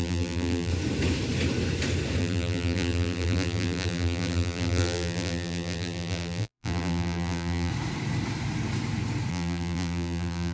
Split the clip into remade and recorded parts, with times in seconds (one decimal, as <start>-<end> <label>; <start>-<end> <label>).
0.0-0.7 remade; 0.7-2.2 recorded; 2.2-7.7 remade; 7.7-9.3 recorded; 9.3-10.5 remade